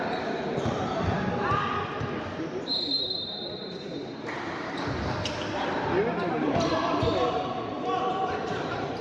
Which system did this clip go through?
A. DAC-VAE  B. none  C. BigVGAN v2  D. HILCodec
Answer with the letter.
C